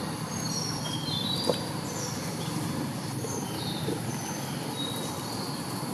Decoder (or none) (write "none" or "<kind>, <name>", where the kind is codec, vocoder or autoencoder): none